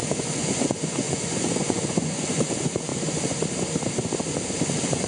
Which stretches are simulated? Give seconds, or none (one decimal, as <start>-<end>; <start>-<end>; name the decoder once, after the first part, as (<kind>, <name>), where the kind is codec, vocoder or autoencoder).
0.0-2.9 (vocoder, Vocos); 4.6-5.1